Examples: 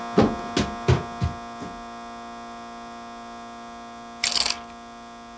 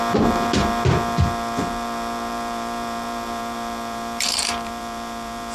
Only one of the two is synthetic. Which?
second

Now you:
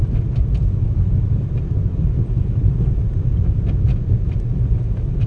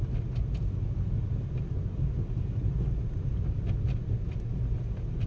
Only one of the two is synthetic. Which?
first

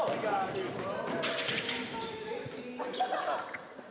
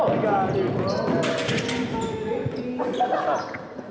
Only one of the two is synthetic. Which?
first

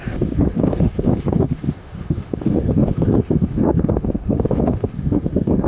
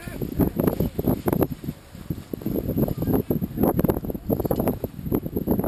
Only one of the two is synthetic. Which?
first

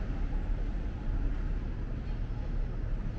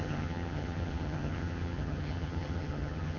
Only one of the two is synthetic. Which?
second